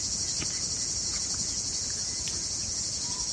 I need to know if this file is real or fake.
fake